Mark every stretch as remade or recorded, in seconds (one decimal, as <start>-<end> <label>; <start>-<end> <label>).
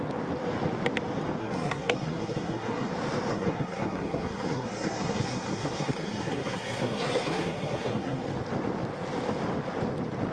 0.0-1.4 recorded; 1.4-2.9 remade; 2.9-3.3 recorded; 3.3-8.2 remade; 8.2-10.3 recorded